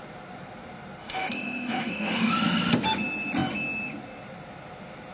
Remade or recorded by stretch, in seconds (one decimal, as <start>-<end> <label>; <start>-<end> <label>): 0.0-1.0 recorded; 1.0-2.3 remade; 2.3-5.1 recorded